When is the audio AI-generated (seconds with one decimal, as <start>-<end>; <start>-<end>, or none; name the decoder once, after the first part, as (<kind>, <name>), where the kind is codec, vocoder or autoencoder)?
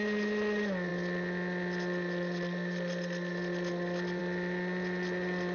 none